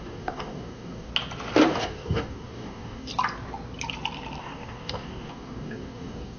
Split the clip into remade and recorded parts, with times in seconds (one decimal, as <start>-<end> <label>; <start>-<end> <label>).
0.0-1.1 remade; 1.1-1.7 recorded; 1.7-3.1 remade; 3.1-4.4 recorded; 4.4-6.4 remade